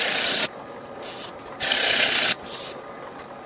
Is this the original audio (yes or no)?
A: yes